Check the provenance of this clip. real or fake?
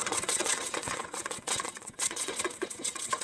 fake